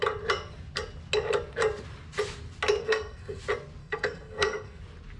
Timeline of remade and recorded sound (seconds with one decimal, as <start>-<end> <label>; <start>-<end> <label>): 0.0-2.8 recorded; 2.8-3.4 remade; 3.4-3.8 recorded; 3.8-4.8 remade; 4.8-5.2 recorded